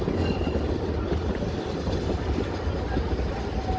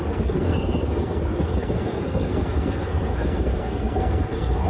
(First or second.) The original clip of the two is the first